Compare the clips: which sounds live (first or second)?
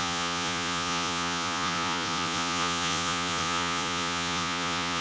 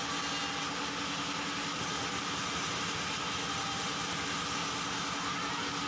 second